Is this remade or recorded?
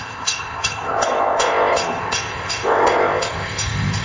remade